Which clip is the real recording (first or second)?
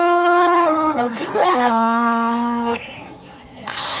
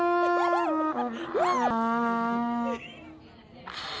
second